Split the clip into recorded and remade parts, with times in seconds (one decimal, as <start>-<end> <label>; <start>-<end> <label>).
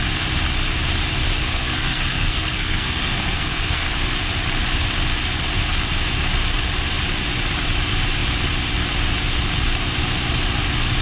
0.0-1.4 recorded; 1.4-3.9 remade; 3.9-11.0 recorded